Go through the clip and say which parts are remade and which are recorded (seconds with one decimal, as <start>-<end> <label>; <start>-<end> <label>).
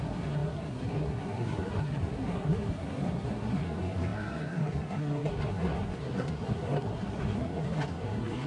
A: 0.0-8.5 remade